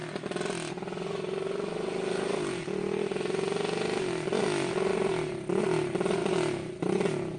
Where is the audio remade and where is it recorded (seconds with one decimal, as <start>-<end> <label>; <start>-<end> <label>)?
0.0-7.4 recorded